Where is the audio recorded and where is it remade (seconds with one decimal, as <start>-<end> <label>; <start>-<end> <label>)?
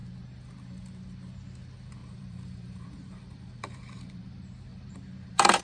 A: 0.0-2.0 recorded; 2.0-4.3 remade; 4.3-4.7 recorded; 4.7-5.6 remade